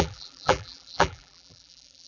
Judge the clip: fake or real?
fake